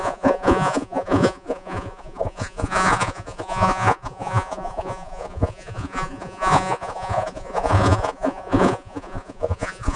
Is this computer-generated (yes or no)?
yes